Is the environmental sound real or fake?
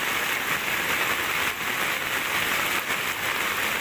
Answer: real